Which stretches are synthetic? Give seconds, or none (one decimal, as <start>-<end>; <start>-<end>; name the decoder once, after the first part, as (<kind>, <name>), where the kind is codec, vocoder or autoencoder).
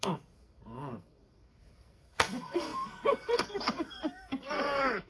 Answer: 0.0-5.1 (codec, SNAC)